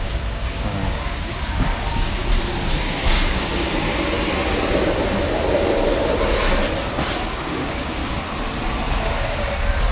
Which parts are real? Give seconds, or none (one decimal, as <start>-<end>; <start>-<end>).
2.2-2.8; 3.5-7.5; 8.0-9.9